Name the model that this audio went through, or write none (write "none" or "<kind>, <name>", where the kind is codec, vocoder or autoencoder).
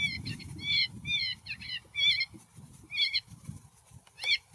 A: none